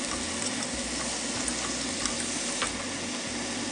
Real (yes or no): yes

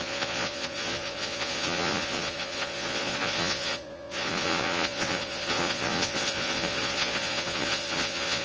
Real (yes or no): no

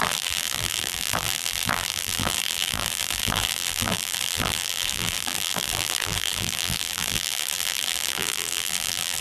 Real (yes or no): no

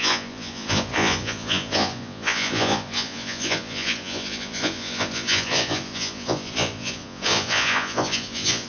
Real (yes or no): no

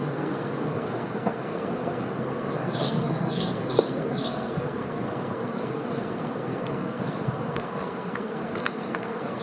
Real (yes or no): no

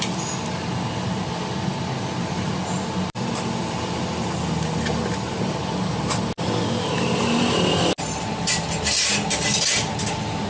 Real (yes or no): yes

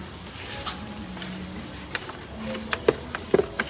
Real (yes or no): yes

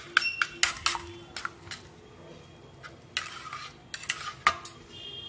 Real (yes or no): yes